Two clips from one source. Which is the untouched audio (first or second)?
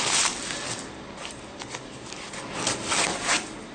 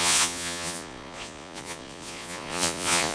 first